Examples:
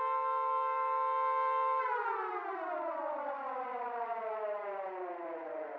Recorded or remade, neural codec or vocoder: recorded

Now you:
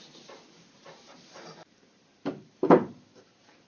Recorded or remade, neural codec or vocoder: remade, vocoder, BigVGAN v2